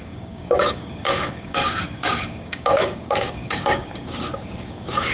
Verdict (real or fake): fake